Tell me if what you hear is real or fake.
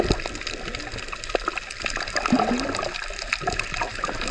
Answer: real